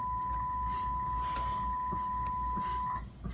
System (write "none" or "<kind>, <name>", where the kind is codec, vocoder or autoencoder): none